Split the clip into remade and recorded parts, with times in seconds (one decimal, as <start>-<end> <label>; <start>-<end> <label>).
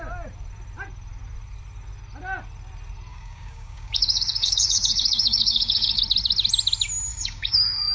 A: 0.0-3.1 recorded; 3.1-6.0 remade; 6.0-7.1 recorded; 7.1-7.9 remade